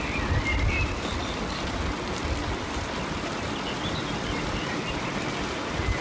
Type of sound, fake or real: fake